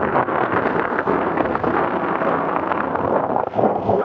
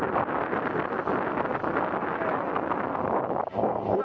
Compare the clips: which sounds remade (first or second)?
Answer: first